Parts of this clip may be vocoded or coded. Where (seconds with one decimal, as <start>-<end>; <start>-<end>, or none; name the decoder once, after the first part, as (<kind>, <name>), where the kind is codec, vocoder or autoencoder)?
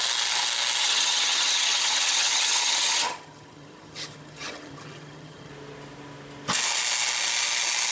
0.8-5.5 (vocoder, HiFi-GAN)